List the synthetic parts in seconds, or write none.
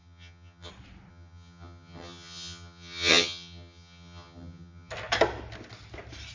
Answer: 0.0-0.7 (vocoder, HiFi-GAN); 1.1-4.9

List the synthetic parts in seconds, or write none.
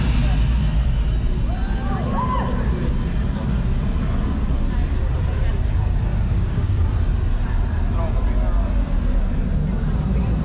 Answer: 6.0-6.9 (codec, DAC)